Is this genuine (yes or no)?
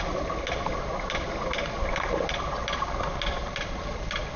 yes